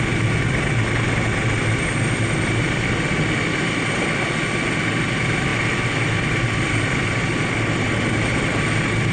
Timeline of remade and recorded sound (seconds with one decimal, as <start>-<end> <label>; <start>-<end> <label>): 0.0-9.1 recorded